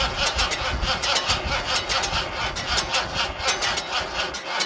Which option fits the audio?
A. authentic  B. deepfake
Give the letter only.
A